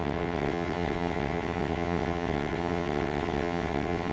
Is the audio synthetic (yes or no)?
yes